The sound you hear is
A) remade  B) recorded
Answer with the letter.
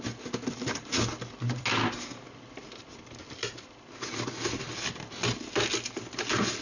B